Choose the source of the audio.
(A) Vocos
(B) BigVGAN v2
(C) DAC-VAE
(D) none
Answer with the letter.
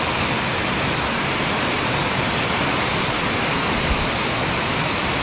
D